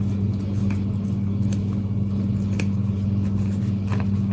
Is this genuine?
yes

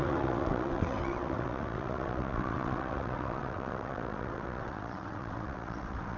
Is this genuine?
no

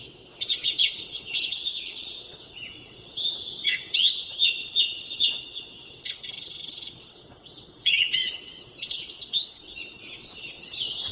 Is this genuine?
no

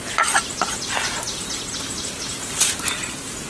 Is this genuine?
yes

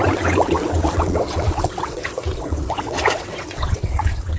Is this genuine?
no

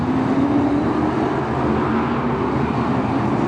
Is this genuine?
yes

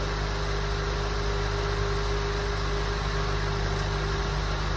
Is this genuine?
yes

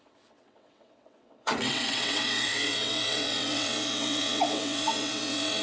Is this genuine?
no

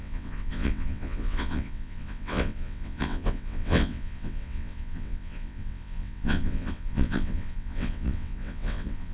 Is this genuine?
no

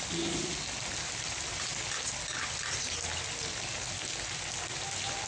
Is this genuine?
yes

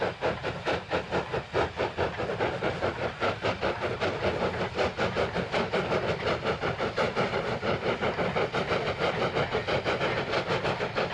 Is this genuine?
yes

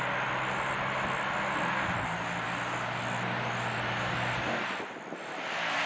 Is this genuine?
yes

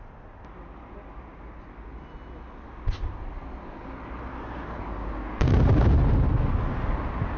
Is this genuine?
yes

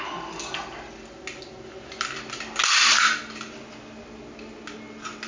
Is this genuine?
yes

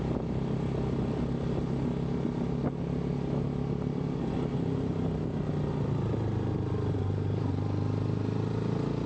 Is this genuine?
yes